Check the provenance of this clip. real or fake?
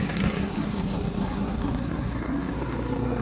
fake